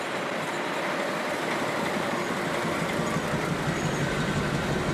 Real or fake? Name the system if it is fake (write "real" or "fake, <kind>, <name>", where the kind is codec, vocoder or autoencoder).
real